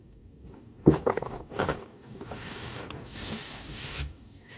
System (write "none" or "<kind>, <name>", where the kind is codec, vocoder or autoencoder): codec, DAC